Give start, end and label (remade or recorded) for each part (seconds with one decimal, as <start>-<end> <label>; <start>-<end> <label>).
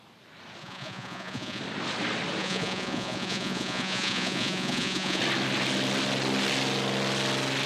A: 0.0-0.6 recorded; 0.6-1.6 remade; 1.6-2.4 recorded; 2.4-5.2 remade; 5.2-7.7 recorded